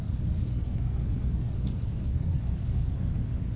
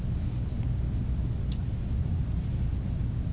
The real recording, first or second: second